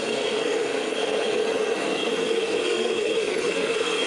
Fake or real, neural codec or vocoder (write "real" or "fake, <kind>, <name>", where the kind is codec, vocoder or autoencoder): fake, codec, SNAC